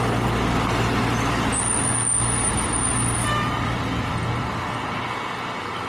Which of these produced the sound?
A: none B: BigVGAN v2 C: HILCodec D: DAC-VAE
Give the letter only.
A